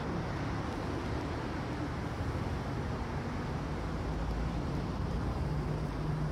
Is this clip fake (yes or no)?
no